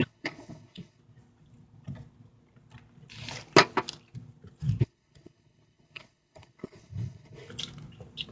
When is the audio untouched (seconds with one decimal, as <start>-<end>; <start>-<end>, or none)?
1.0-4.8; 7.5-8.3